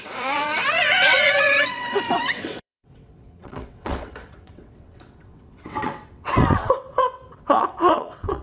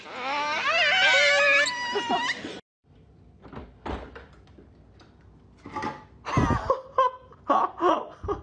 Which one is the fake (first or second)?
first